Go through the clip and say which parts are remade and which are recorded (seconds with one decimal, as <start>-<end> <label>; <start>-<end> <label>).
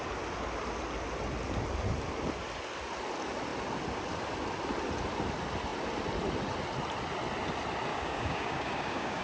0.0-7.9 recorded; 7.9-9.2 remade